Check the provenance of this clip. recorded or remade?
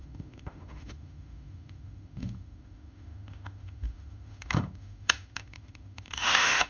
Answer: remade